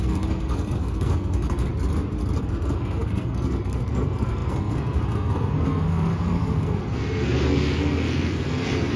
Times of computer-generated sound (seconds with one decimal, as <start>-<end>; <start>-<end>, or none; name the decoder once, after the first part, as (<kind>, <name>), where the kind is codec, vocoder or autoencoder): 0.0-1.7 (codec, SNAC); 2.4-9.0